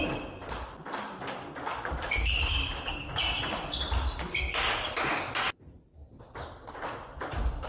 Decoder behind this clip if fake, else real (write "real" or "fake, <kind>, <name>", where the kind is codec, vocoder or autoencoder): real